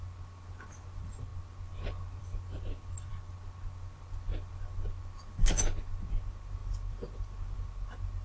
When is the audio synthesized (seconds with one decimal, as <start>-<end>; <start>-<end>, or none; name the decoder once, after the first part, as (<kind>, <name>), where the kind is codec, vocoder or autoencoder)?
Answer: 6.6-7.2 (vocoder, BigVGAN v2)